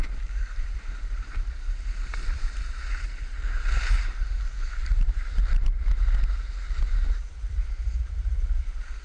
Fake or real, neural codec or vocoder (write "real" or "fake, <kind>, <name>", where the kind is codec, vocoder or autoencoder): fake, vocoder, BigVGAN v2